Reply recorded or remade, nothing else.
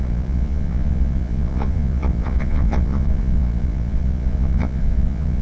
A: remade